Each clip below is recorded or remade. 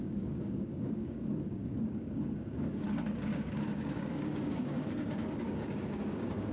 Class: remade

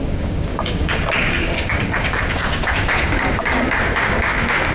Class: remade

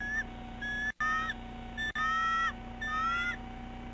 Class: recorded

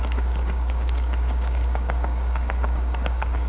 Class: remade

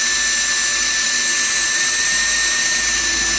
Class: recorded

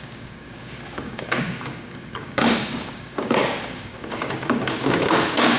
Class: remade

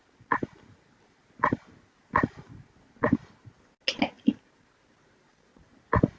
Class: recorded